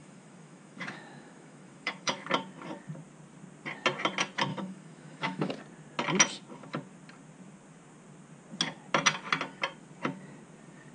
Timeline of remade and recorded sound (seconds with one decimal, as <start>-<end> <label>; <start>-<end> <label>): 0.0-2.3 remade; 2.3-4.5 recorded; 4.5-5.5 remade; 5.5-10.9 recorded